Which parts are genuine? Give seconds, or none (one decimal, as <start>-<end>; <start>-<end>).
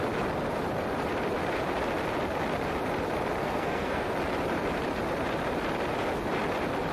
0.0-3.4; 4.1-6.9